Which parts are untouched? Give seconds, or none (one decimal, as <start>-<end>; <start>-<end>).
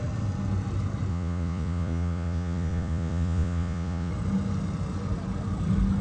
0.0-1.1; 4.1-6.0